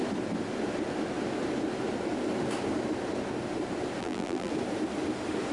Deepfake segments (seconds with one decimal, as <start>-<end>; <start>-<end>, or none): 4.0-4.5